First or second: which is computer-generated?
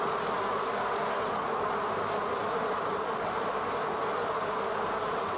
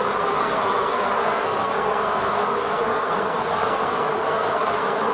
second